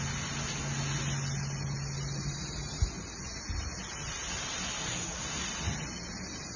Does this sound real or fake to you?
real